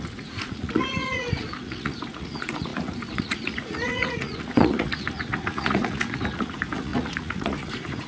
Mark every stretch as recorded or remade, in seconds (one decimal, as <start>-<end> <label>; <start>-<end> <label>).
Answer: 0.0-8.1 remade